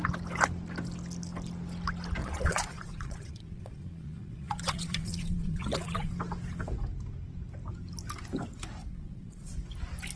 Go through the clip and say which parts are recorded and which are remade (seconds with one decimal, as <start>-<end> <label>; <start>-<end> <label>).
0.0-2.2 recorded; 2.2-6.1 remade; 6.1-8.8 recorded; 8.8-9.6 remade; 9.6-10.2 recorded